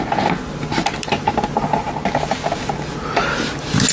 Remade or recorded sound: recorded